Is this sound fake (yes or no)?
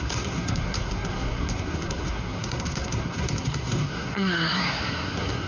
yes